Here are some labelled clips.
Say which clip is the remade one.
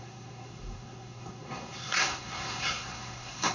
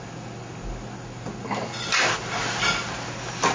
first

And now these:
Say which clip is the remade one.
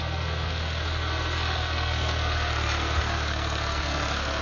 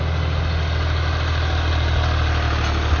first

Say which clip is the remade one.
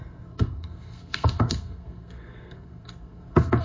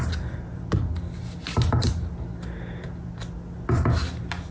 first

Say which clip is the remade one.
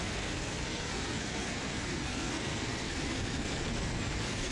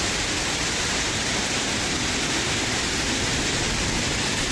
first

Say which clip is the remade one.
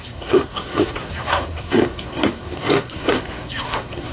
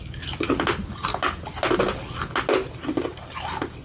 first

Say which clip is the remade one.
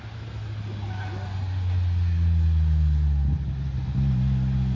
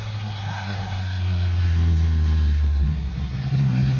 second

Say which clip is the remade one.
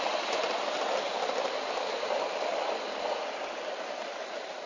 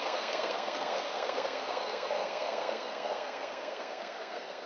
second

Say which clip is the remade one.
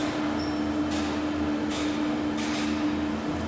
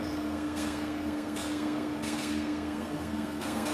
second